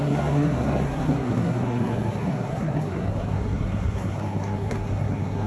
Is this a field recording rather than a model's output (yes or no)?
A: no